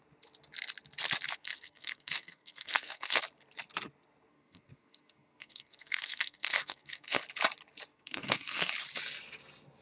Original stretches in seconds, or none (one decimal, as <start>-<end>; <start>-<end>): 0.0-1.4; 3.2-4.3; 7.2-7.9; 8.7-9.8

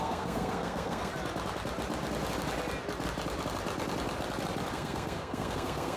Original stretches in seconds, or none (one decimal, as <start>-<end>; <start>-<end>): 1.1-4.7